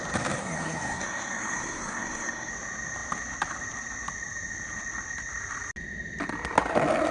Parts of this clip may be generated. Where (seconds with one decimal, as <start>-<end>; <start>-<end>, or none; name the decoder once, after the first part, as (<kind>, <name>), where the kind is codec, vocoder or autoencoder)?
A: 0.4-2.5 (codec, SNAC)